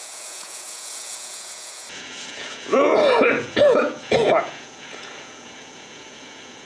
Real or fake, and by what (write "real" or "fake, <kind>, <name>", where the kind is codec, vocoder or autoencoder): fake, vocoder, Vocos